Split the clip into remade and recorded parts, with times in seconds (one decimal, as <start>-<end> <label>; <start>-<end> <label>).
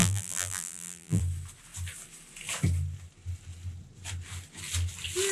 0.0-1.2 remade; 1.2-5.3 recorded